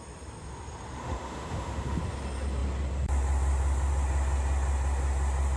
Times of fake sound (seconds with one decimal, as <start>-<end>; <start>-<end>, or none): 1.0-2.0